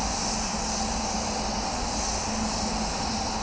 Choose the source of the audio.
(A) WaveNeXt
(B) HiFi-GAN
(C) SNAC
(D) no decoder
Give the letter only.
D